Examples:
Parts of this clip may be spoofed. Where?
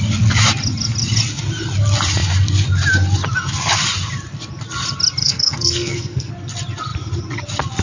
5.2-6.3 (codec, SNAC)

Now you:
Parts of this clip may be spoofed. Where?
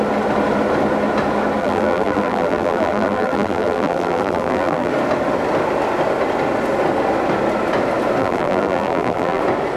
1.6-4.9 (vocoder, BigVGAN v2); 8.2-9.4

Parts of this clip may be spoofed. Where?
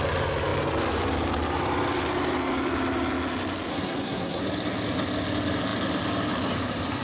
3.7-4.4 (codec, SNAC)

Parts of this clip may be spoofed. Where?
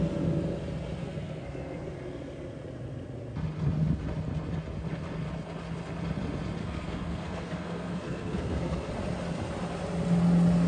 1.0-1.9 (codec, SNAC); 6.6-8.9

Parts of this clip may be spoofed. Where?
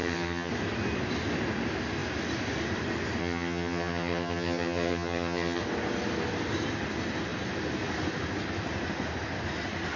0.0-0.5 (vocoder, HiFi-GAN); 3.2-5.6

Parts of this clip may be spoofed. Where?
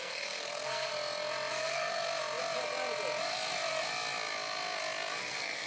0.0-0.9 (codec, SNAC); 1.5-2.1; 5.2-5.7